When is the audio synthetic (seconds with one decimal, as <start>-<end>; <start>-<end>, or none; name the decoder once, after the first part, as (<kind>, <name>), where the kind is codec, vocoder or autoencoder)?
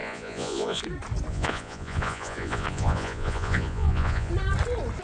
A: 0.0-0.8 (vocoder, Vocos); 1.3-4.3